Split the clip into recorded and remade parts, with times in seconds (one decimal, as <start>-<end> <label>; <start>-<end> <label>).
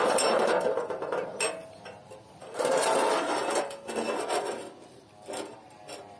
0.0-1.3 remade; 1.3-4.3 recorded; 4.3-6.2 remade